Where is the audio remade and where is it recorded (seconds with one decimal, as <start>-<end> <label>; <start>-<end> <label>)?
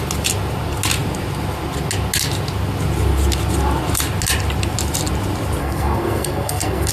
0.0-5.6 recorded; 5.6-6.9 remade